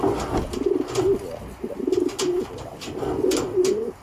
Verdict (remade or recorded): recorded